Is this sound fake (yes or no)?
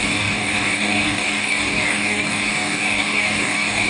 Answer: yes